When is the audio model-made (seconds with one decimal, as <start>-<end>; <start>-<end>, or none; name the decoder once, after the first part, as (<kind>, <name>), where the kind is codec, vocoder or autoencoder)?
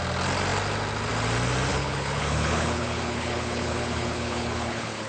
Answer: 1.7-5.1 (codec, HILCodec)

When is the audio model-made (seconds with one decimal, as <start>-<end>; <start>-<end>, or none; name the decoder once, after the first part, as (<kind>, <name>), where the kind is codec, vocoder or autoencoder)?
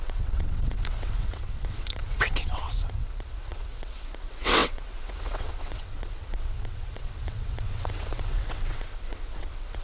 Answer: 0.0-9.8 (vocoder, WaveNeXt)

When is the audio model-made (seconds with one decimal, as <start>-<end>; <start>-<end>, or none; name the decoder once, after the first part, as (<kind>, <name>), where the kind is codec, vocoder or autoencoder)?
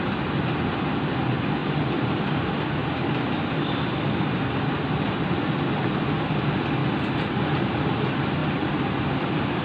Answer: 1.6-2.3 (vocoder, BigVGAN v2); 2.8-4.7; 8.4-9.6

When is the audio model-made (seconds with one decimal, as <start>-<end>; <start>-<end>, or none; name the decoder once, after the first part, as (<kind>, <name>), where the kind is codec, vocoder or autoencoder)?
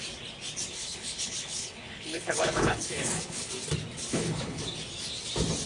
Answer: 0.7-3.5 (codec, HILCodec); 4.1-4.6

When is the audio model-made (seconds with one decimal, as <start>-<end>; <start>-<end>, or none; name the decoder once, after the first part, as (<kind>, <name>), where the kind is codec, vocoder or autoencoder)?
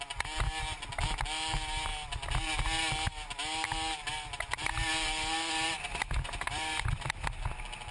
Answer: none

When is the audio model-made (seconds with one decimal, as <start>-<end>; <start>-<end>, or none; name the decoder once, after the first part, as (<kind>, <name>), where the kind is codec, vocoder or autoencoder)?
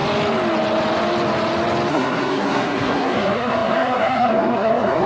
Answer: 1.9-5.1 (codec, SNAC)